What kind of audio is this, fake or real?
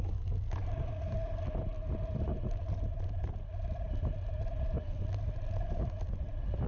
real